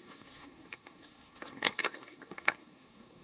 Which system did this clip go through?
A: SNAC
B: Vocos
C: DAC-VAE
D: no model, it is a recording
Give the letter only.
A